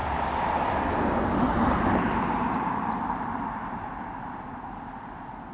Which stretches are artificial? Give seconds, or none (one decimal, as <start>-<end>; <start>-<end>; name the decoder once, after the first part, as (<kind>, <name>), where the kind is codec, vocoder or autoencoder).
none